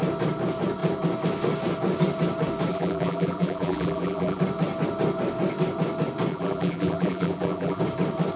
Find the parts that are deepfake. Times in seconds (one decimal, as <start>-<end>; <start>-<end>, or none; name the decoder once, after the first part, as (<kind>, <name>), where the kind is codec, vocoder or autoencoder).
2.7-4.4 (vocoder, BigVGAN v2); 6.3-7.8